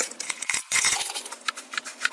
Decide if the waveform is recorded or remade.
remade